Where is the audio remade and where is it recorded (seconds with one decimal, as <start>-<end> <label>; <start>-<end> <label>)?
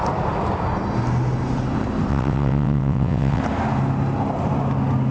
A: 0.0-2.1 recorded; 2.1-3.4 remade; 3.4-5.1 recorded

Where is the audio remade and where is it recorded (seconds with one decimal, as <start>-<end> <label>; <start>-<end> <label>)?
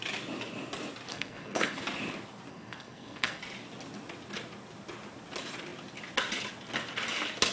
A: 0.0-1.1 recorded; 1.1-1.8 remade; 1.8-2.5 recorded; 2.5-3.4 remade; 3.4-7.5 recorded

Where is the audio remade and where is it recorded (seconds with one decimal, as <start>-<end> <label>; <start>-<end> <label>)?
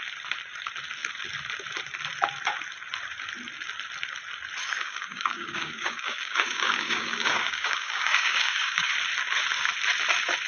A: 0.0-4.6 recorded; 4.6-8.9 remade; 8.9-10.5 recorded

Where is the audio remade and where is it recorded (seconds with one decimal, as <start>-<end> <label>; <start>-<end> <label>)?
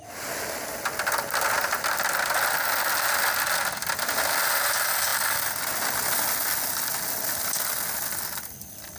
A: 0.0-9.0 recorded